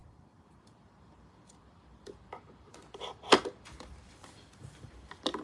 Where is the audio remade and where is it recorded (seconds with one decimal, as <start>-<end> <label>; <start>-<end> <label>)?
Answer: 0.0-5.4 remade